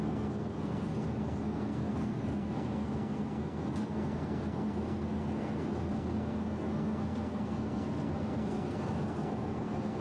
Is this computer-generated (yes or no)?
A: yes